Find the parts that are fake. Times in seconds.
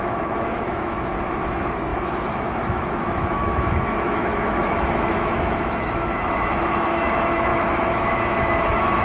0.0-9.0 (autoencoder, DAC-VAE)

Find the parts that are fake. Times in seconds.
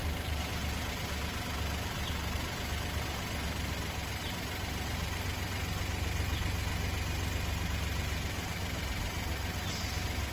none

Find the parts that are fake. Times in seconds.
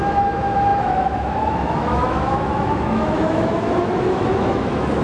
0.0-5.0 (autoencoder, DAC-VAE)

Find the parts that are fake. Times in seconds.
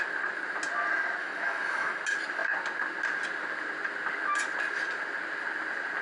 1.2-2.0 (autoencoder, DAC-VAE)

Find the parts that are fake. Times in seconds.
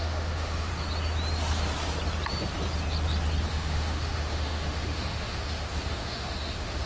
0.0-0.7 (autoencoder, DAC-VAE); 3.5-6.9